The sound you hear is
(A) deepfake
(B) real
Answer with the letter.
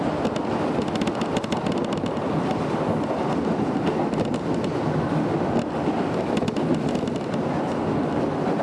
B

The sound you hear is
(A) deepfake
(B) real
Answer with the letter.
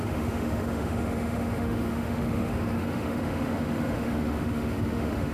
A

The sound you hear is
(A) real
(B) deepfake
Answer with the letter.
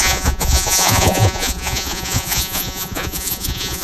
B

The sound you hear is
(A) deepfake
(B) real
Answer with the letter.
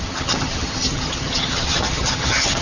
A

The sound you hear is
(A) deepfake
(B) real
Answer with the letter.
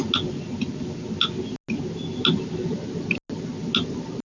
B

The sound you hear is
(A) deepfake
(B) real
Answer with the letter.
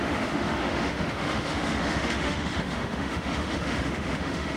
A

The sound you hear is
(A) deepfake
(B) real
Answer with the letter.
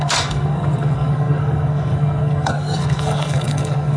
A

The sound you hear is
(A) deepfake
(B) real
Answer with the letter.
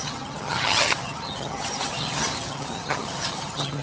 A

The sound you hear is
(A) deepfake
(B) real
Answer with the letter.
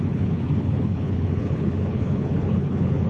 A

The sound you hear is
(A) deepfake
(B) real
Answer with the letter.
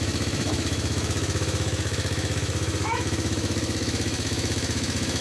A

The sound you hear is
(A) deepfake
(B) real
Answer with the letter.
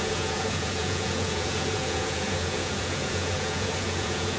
A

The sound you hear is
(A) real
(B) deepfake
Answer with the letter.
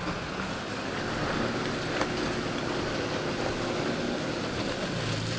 A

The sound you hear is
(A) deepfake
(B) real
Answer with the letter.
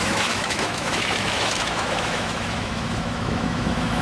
A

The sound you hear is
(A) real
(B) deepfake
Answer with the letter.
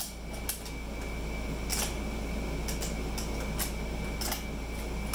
A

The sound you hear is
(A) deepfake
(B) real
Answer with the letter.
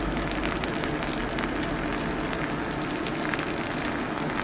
B